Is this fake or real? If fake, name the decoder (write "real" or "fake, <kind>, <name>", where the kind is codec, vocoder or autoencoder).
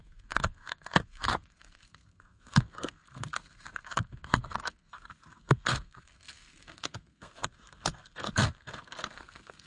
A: fake, codec, SNAC